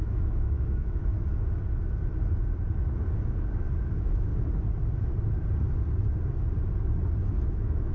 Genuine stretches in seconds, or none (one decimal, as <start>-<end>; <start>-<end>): 1.1-3.8; 4.3-7.5